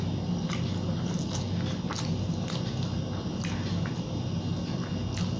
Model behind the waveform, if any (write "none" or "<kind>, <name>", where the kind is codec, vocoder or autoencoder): none